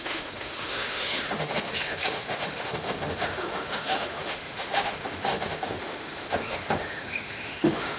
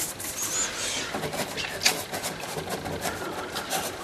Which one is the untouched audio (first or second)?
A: second